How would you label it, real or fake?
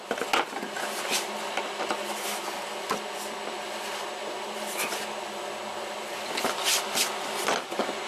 real